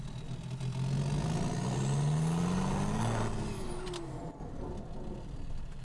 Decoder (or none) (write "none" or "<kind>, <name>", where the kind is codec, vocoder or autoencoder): none